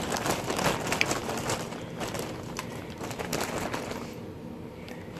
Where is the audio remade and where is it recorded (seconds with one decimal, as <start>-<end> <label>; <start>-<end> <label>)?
0.0-1.2 recorded; 1.2-2.9 remade; 2.9-3.3 recorded; 3.3-3.8 remade; 3.8-5.2 recorded